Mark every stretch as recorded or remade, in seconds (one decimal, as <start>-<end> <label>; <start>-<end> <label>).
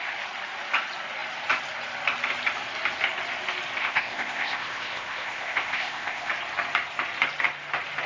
0.0-3.8 recorded; 3.8-6.3 remade; 6.3-8.1 recorded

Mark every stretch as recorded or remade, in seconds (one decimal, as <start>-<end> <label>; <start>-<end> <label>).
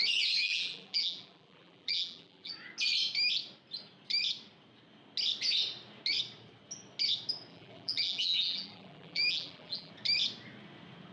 0.0-0.4 recorded; 0.4-2.5 remade; 2.5-7.5 recorded; 7.5-9.9 remade; 9.9-11.1 recorded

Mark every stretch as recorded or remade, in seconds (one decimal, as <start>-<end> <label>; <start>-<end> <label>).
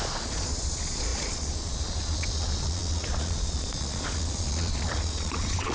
0.0-5.7 remade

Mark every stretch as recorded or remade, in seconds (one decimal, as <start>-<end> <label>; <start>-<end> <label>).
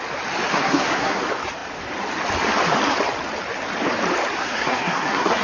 0.0-0.5 recorded; 0.5-1.2 remade; 1.2-4.4 recorded; 4.4-5.4 remade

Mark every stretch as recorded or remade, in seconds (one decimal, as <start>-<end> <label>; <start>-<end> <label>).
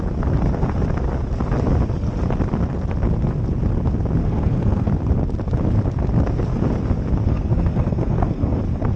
0.0-4.2 recorded; 4.2-4.9 remade; 4.9-7.3 recorded; 7.3-8.6 remade; 8.6-9.0 recorded